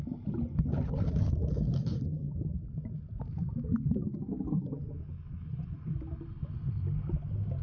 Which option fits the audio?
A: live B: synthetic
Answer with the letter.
A